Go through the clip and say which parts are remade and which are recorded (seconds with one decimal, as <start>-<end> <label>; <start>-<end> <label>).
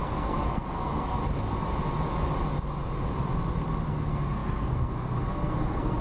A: 0.0-1.2 remade; 1.2-3.9 recorded; 3.9-6.0 remade